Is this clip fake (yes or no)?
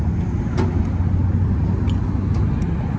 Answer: no